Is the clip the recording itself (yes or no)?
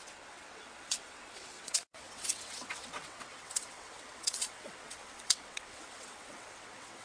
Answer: no